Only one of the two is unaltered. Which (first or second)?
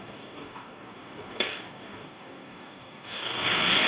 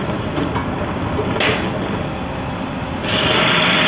second